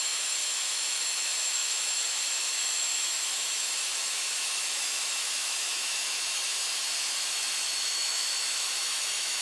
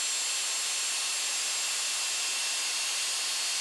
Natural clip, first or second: second